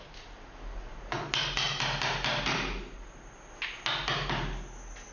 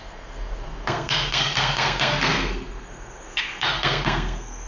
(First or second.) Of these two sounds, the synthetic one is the second